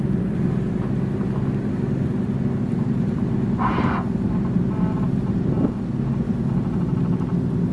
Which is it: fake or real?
real